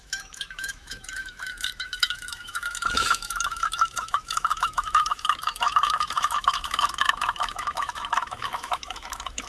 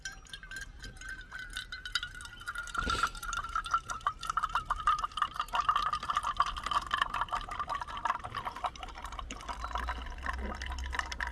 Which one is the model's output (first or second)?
first